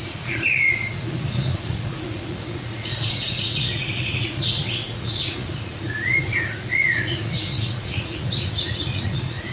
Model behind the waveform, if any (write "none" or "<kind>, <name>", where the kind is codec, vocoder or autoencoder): vocoder, Vocos